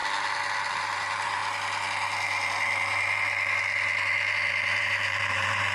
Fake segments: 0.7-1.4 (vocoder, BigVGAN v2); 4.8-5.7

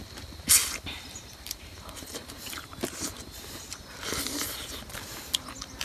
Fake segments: 0.6-3.8 (vocoder, BigVGAN v2)

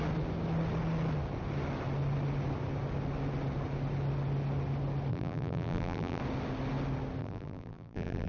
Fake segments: 5.1-6.2 (vocoder, BigVGAN v2); 7.2-8.3

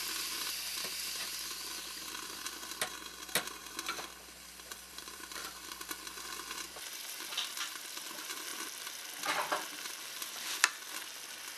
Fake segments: 3.6-7.7 (vocoder, BigVGAN v2)

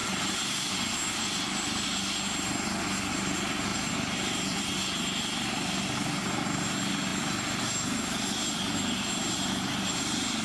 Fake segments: 0.0-0.7 (vocoder, BigVGAN v2); 3.7-4.6